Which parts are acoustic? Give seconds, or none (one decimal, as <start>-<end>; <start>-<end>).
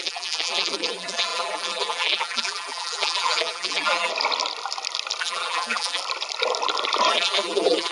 4.1-5.2; 6.0-7.1